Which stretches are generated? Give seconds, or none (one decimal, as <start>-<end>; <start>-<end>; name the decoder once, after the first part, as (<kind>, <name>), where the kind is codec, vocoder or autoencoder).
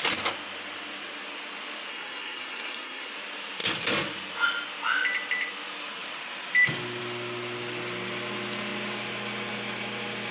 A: 1.9-3.1 (codec, SNAC)